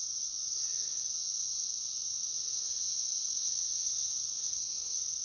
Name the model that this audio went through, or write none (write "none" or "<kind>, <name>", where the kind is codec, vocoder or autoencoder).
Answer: codec, SNAC